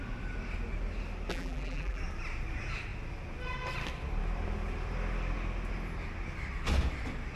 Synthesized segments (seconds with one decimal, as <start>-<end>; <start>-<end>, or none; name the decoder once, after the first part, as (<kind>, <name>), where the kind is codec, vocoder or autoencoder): 1.3-2.0 (vocoder, BigVGAN v2)